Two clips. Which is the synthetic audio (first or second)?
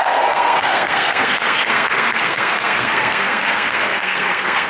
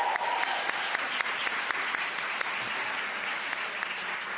first